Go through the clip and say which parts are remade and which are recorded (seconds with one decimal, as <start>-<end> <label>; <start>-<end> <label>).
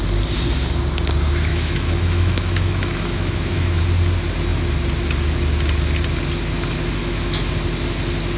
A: 0.0-1.5 recorded; 1.5-3.8 remade; 3.8-7.0 recorded; 7.0-7.5 remade; 7.5-8.4 recorded